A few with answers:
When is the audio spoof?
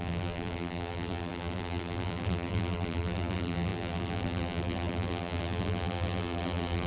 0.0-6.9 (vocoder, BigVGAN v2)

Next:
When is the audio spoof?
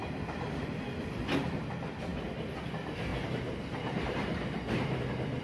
0.0-1.0 (vocoder, BigVGAN v2); 3.1-5.0